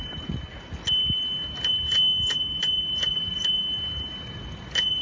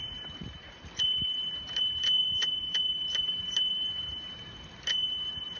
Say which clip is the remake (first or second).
second